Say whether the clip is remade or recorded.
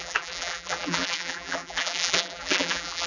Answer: remade